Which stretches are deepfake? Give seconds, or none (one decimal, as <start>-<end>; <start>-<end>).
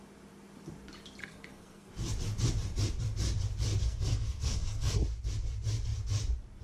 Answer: 1.2-1.9; 3.8-5.0